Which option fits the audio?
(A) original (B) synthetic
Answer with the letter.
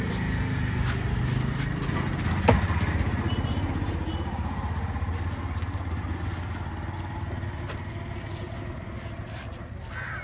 A